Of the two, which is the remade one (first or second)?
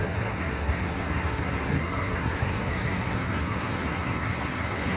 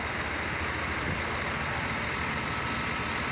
first